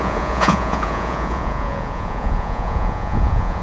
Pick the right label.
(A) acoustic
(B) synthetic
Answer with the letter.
B